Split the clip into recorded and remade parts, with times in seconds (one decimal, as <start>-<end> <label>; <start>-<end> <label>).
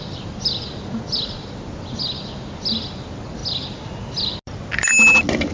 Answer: 0.0-5.5 recorded